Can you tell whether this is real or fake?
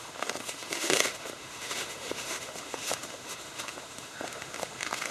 fake